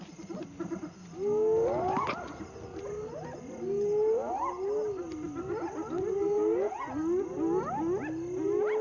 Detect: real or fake real